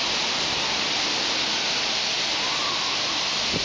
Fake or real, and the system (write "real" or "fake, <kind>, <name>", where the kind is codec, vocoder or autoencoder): real